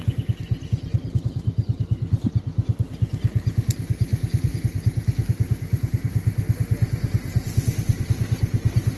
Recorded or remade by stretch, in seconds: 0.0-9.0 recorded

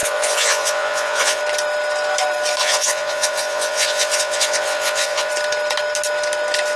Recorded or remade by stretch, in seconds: 0.0-1.4 remade; 1.4-2.6 recorded; 2.6-5.3 remade; 5.3-6.8 recorded

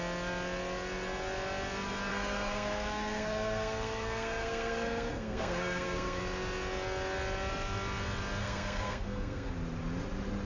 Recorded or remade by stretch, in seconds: 0.0-2.1 recorded; 2.1-6.2 remade; 6.2-8.4 recorded; 8.4-9.5 remade; 9.5-10.4 recorded

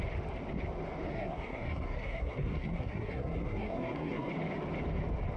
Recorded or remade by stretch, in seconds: 0.0-1.1 recorded; 1.1-4.3 remade; 4.3-5.4 recorded

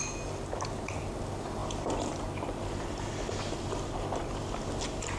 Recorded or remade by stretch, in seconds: 0.0-5.2 recorded